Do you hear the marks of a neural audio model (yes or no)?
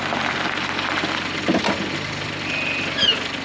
no